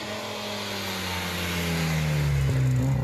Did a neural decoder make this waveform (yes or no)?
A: no